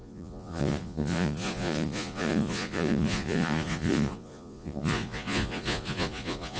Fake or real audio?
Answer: fake